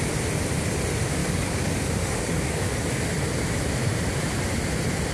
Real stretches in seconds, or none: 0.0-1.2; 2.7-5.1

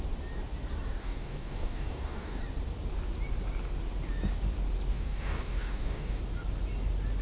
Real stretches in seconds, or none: 0.0-1.0; 2.4-4.9; 6.2-7.2